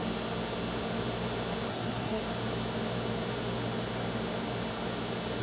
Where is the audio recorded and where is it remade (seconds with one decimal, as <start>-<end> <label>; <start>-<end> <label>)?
0.0-1.7 recorded; 1.7-2.2 remade; 2.2-5.4 recorded